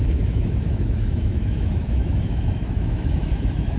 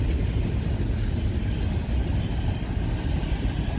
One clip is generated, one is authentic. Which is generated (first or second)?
first